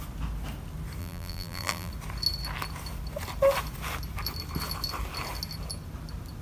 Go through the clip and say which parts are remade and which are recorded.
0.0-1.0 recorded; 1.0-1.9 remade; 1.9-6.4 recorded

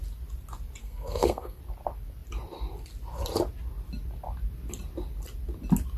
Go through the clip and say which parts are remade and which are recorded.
0.0-0.8 recorded; 0.8-1.6 remade; 1.6-6.0 recorded